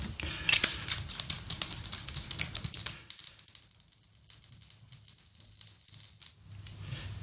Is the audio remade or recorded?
recorded